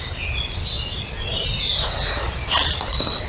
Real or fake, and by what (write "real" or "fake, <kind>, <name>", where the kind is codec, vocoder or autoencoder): real